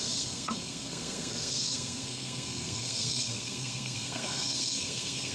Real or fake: fake